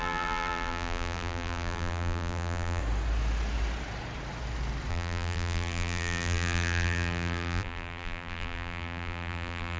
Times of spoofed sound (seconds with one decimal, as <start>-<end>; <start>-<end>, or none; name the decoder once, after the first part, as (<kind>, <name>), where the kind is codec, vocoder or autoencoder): 0.0-2.8 (vocoder, BigVGAN v2); 4.9-9.8